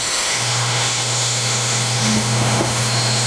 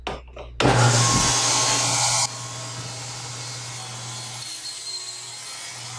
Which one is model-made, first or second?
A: first